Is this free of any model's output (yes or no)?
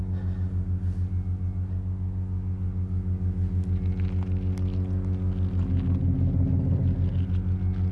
yes